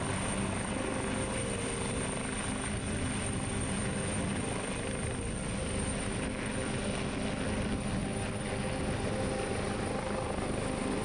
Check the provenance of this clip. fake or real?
real